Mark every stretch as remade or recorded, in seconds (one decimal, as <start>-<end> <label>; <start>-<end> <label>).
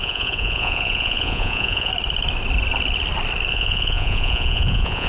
0.0-1.9 remade; 1.9-3.5 recorded; 3.5-5.1 remade